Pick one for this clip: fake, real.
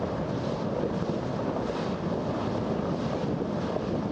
real